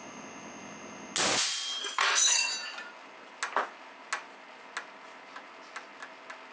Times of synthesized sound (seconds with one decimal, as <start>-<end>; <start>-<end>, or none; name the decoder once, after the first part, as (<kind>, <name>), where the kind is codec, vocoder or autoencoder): 1.8-2.5 (codec, SNAC)